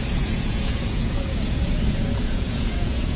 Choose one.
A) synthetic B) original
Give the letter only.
A